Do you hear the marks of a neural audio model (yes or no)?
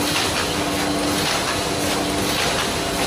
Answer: no